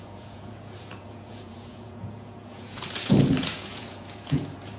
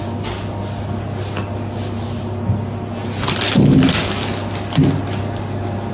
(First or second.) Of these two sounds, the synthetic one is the first